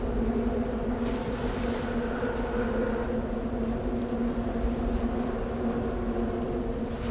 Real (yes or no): yes